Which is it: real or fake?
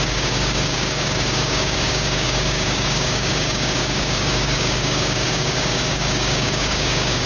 fake